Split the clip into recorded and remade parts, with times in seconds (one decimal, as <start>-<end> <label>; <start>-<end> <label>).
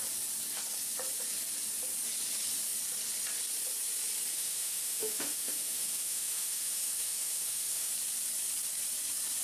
0.0-4.3 recorded; 4.3-7.9 remade; 7.9-9.4 recorded